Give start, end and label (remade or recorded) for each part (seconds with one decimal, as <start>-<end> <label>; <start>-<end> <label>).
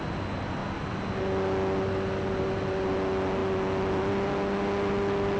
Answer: 0.0-5.4 recorded